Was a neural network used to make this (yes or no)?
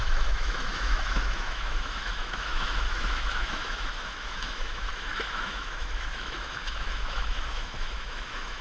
yes